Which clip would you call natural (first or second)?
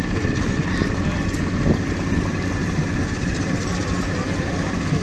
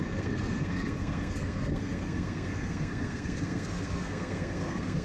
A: first